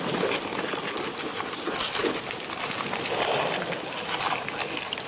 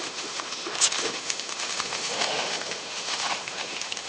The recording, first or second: first